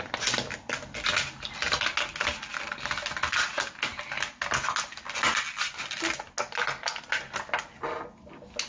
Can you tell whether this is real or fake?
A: real